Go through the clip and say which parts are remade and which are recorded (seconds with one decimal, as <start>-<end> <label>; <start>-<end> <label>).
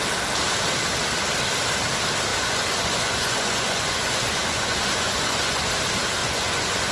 0.0-2.3 recorded; 2.3-5.7 remade; 5.7-6.2 recorded; 6.2-6.9 remade